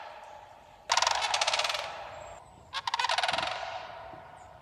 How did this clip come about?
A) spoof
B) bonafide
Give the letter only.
B